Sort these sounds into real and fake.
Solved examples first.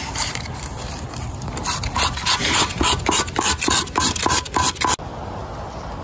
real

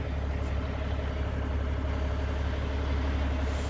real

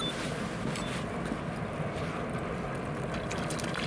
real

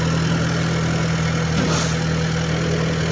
real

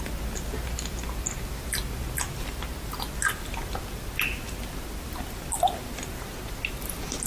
real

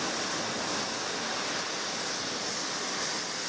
real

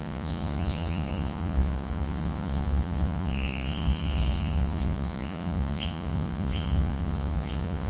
fake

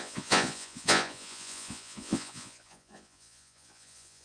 fake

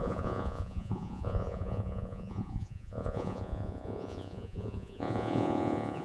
fake